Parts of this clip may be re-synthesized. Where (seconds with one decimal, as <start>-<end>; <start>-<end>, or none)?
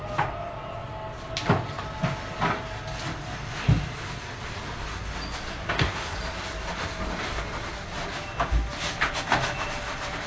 5.5-6.2